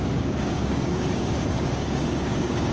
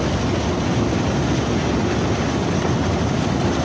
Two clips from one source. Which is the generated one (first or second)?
first